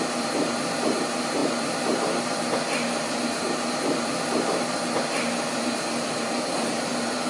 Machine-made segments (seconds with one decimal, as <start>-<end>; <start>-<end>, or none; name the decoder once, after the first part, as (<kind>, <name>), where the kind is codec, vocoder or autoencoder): 0.0-7.3 (vocoder, BigVGAN v2)